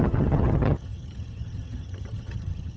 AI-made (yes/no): yes